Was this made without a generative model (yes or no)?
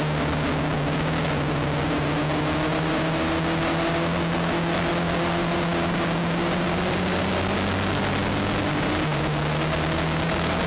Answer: yes